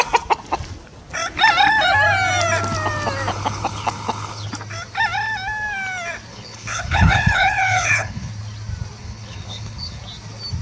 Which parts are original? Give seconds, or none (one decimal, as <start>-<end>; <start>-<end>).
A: 0.0-3.3; 4.5-6.3; 8.3-9.0; 10.0-10.6